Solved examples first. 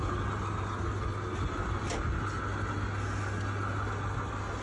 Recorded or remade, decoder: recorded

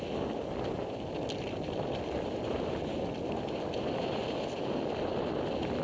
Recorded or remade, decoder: recorded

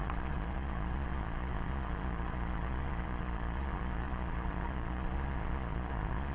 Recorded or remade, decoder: remade, vocoder, Vocos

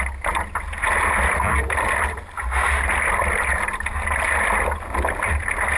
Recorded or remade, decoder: recorded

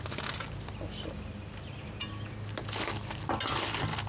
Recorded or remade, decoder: recorded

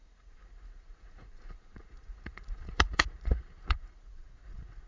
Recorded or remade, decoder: remade, vocoder, Vocos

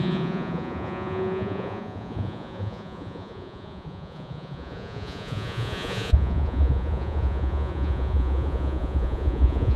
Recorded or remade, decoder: remade, vocoder, Vocos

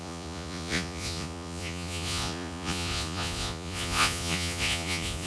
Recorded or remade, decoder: remade, vocoder, Vocos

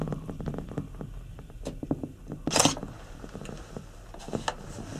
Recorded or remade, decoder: recorded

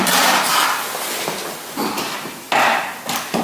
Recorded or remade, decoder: recorded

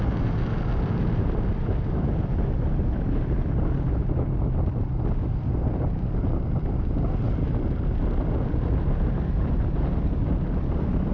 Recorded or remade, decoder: recorded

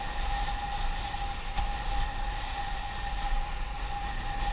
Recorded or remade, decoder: recorded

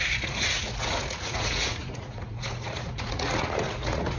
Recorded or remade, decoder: remade, vocoder, Vocos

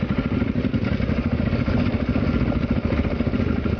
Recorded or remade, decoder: recorded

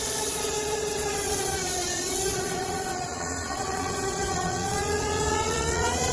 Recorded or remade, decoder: remade, vocoder, Vocos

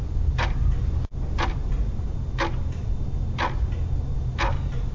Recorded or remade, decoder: recorded